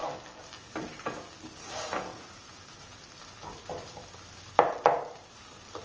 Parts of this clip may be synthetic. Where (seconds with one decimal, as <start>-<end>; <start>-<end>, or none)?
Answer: 2.1-3.0